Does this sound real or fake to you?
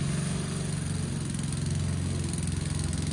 real